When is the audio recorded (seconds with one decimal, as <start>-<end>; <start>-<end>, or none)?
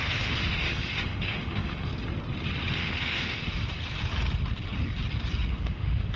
1.9-2.7; 3.4-5.5